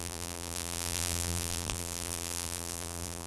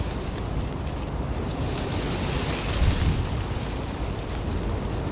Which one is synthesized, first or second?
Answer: first